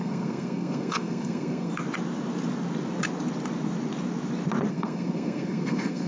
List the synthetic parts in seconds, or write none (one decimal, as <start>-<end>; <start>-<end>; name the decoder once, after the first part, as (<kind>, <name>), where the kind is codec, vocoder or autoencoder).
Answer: 0.0-1.7 (codec, SNAC); 4.7-6.1